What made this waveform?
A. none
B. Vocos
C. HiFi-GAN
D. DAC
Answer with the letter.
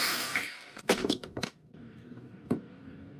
D